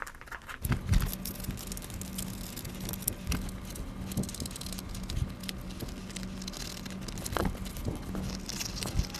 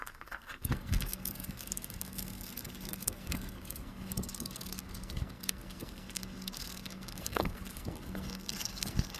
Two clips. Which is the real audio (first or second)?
first